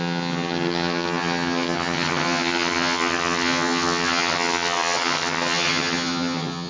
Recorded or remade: remade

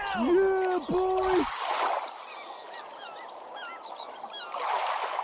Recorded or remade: recorded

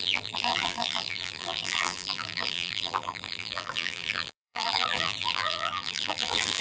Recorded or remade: remade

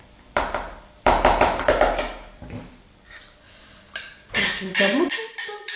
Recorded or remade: remade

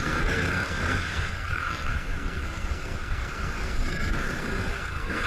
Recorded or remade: remade